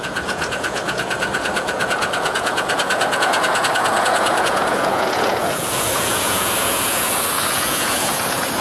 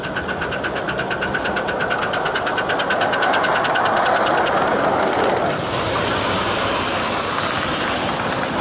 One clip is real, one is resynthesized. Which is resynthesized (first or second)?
first